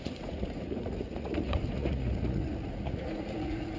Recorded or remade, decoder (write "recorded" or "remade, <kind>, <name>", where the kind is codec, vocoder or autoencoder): remade, vocoder, Vocos